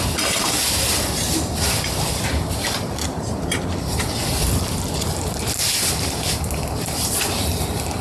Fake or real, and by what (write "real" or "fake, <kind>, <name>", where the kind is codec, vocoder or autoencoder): fake, vocoder, BigVGAN v2